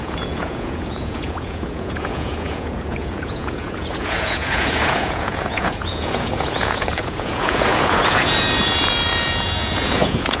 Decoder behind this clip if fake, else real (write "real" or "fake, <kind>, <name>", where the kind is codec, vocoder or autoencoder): fake, vocoder, Vocos